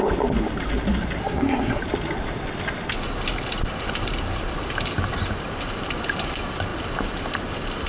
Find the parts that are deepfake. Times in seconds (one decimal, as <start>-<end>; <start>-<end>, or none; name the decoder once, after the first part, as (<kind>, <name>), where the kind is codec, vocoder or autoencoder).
1.2-1.8 (codec, SNAC)